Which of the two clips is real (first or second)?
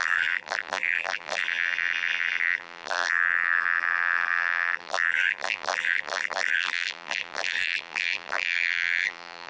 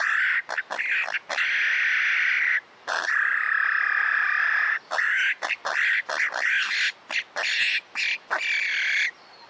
second